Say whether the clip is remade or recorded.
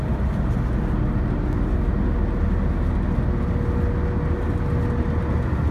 recorded